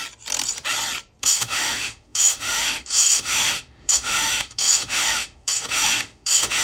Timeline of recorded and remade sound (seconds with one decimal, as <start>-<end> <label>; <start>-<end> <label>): 0.0-1.2 recorded; 1.2-6.6 remade